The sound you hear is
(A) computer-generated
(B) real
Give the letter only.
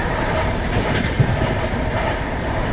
A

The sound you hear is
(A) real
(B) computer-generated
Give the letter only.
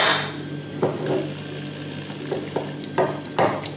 A